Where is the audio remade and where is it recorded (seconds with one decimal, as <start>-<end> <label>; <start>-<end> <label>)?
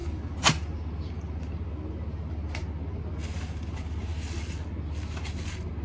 0.0-5.8 recorded